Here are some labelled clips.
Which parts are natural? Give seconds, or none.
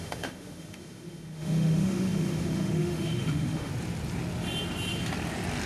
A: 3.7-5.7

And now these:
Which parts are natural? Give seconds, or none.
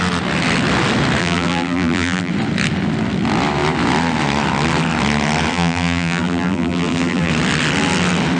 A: 0.0-1.2; 2.3-5.5; 7.3-8.4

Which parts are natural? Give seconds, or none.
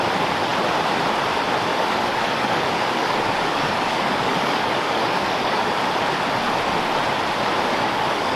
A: 0.0-1.7; 5.9-7.7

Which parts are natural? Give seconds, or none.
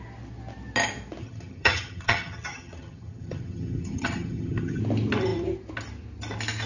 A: 0.0-1.2; 4.8-6.7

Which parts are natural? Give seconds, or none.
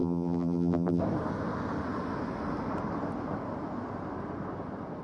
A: 1.0-5.0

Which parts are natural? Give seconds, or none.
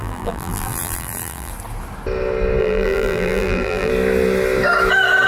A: 1.5-2.6; 3.9-5.3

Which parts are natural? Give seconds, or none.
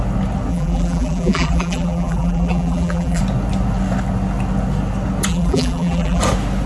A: 0.0-0.5; 3.2-5.3; 6.2-6.7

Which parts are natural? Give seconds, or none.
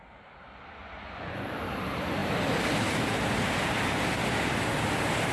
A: 0.0-0.8; 1.5-5.3